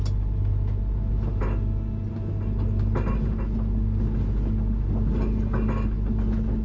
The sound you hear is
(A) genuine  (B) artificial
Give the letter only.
A